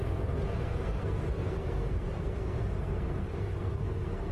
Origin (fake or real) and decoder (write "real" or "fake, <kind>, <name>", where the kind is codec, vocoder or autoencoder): fake, codec, SNAC